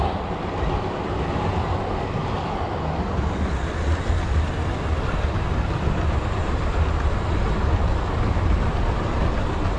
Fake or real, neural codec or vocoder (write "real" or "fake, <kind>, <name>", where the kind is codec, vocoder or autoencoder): real